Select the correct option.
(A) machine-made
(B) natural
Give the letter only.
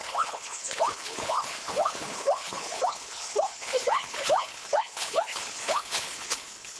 A